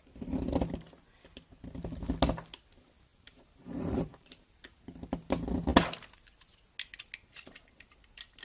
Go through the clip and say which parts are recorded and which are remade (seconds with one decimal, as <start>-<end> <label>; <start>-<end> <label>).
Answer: 0.0-3.1 recorded; 3.1-4.4 remade; 4.4-8.4 recorded